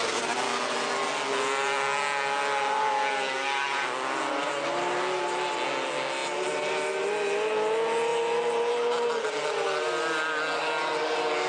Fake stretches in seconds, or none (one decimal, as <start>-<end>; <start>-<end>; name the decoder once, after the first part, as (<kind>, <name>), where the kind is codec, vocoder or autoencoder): none